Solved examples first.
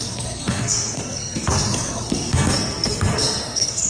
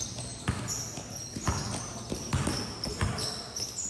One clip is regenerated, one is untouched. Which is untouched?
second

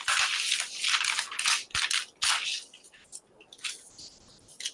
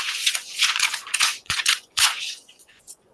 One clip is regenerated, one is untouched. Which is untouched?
first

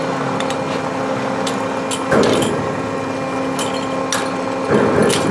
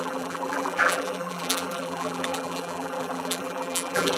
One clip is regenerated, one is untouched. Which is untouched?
first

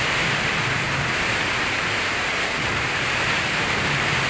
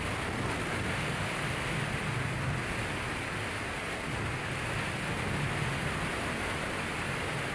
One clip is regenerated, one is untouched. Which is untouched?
second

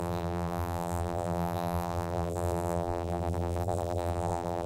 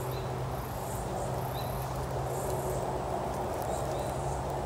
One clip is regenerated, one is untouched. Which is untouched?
second